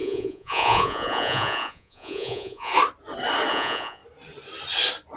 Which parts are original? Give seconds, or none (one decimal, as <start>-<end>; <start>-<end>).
2.7-3.5; 4.0-5.2